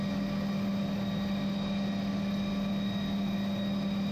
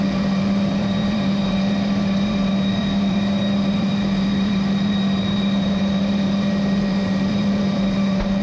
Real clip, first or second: first